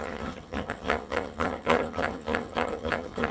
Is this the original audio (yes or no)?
no